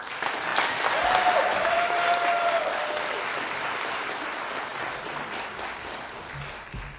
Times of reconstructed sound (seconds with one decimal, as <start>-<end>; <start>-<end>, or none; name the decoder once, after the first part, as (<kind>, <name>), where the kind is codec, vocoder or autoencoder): 0.5-2.3 (vocoder, BigVGAN v2)